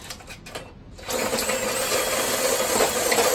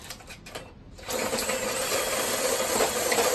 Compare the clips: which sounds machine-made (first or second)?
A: second